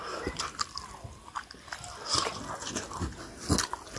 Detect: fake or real real